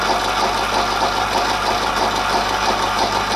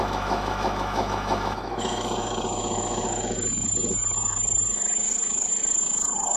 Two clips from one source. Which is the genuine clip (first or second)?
first